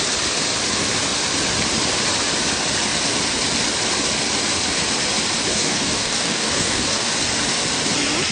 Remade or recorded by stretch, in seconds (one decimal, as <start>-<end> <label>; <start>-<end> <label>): 0.0-5.5 recorded; 5.5-7.2 remade; 7.2-8.3 recorded

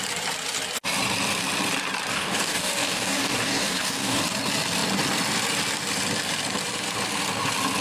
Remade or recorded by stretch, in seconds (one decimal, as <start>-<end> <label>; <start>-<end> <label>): 0.0-2.1 recorded; 2.1-4.2 remade; 4.2-7.8 recorded

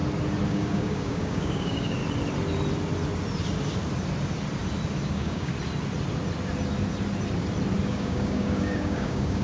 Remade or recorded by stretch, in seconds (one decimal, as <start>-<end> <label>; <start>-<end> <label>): 0.0-0.5 recorded; 0.5-2.0 remade; 2.0-5.1 recorded; 5.1-5.5 remade; 5.5-7.9 recorded; 7.9-9.4 remade

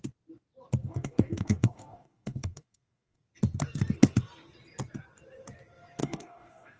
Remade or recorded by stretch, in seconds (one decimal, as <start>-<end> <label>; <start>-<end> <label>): 0.0-0.8 recorded; 0.8-3.2 remade; 3.2-6.0 recorded; 6.0-6.8 remade

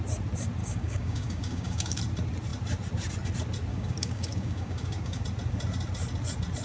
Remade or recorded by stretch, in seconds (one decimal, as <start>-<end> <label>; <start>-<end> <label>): 0.0-0.6 recorded; 0.6-2.0 remade; 2.0-3.7 recorded; 3.7-5.2 remade; 5.2-6.6 recorded

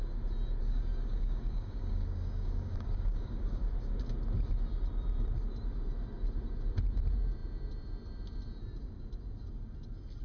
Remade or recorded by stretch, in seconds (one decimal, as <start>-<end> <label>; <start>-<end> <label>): 0.0-0.6 recorded; 0.6-3.6 remade; 3.6-10.2 recorded

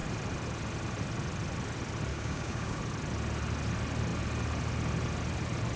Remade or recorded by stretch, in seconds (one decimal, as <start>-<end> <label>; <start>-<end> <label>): 0.0-2.1 recorded; 2.1-2.8 remade; 2.8-5.8 recorded

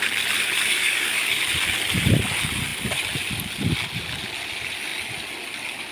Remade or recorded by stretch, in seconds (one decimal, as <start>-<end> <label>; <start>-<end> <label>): 0.0-0.7 recorded; 0.7-1.4 remade; 1.4-5.9 recorded